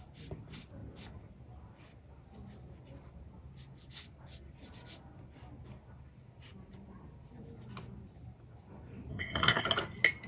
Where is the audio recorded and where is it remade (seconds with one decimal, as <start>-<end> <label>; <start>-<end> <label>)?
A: 0.0-9.1 recorded; 9.1-9.6 remade; 9.6-10.3 recorded